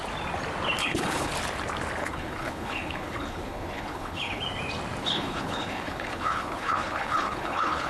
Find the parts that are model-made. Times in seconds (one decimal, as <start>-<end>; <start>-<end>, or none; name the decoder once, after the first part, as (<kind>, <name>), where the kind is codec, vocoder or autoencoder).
0.8-1.3 (codec, HILCodec); 2.0-4.4; 5.0-7.9